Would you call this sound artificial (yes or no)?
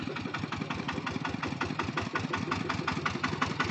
no